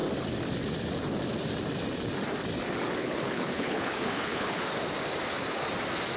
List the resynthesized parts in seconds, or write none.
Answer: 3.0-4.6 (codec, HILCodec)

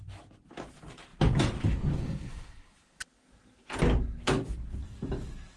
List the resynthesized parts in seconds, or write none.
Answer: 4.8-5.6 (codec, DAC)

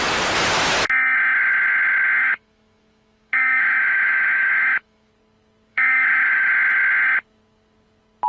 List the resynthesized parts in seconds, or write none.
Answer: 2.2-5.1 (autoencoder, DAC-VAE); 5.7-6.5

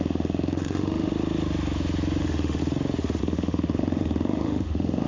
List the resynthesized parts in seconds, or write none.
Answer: 0.0-1.1 (autoencoder, DAC-VAE); 2.2-2.6; 3.2-5.1